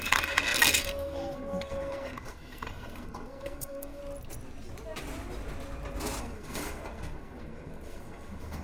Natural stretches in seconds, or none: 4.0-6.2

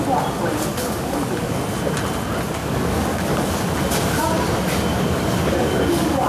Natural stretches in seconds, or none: 0.0-0.7; 1.6-2.6; 3.5-4.9